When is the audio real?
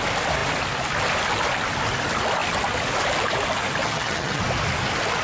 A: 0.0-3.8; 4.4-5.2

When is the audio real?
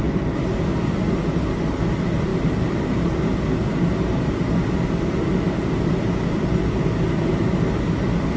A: 0.0-8.4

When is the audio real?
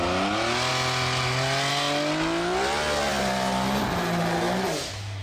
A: 0.0-5.2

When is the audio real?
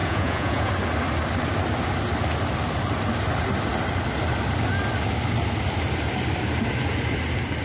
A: 0.7-7.6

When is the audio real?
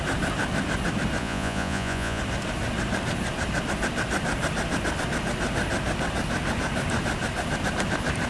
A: 0.0-1.2; 2.2-8.3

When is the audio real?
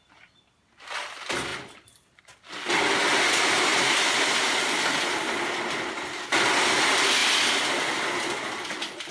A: 0.0-9.1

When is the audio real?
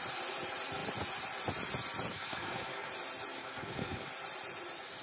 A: 0.0-2.1; 2.9-3.3; 4.1-5.0